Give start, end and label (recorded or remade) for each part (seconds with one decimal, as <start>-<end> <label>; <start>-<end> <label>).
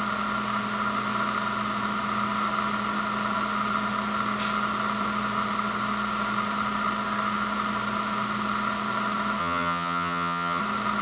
0.0-9.4 recorded; 9.4-10.6 remade; 10.6-11.0 recorded